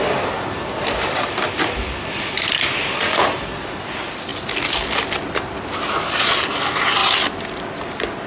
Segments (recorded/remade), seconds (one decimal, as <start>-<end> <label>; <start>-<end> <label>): 0.0-8.3 recorded